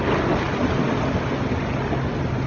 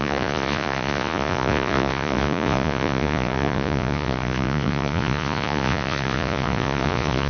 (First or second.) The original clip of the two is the first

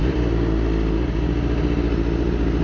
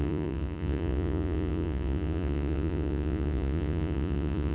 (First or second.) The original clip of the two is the first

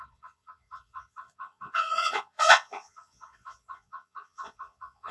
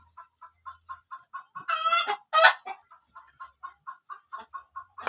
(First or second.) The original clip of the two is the second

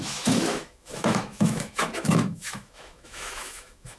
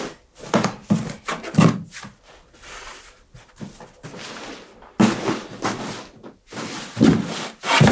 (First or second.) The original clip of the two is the second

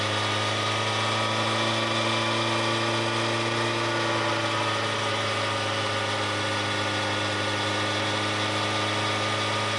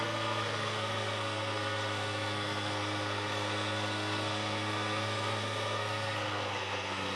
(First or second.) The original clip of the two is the first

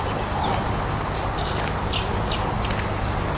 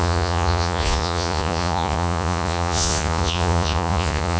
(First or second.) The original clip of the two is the first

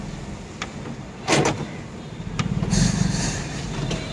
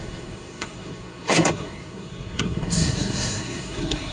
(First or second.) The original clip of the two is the first